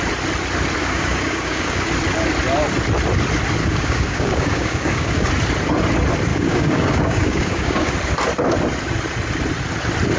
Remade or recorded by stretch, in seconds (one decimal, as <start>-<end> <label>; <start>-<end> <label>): 0.0-0.8 recorded; 0.8-1.9 remade; 1.9-3.6 recorded; 3.6-5.3 remade; 5.3-6.3 recorded; 6.3-7.9 remade; 7.9-10.2 recorded